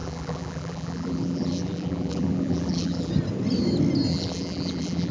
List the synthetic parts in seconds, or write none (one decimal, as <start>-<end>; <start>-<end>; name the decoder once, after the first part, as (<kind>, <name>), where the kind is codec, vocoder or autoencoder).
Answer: 0.0-3.1 (vocoder, BigVGAN v2); 4.1-5.1